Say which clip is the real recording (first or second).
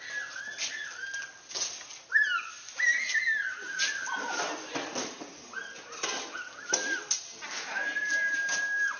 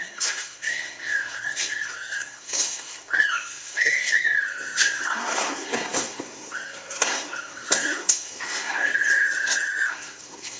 first